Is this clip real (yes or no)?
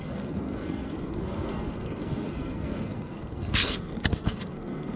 no